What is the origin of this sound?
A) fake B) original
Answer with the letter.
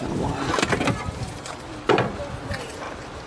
B